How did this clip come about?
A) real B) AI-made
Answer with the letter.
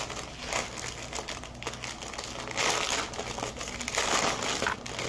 A